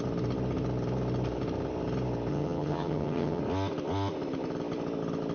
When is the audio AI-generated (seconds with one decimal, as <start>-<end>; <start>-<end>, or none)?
2.3-3.4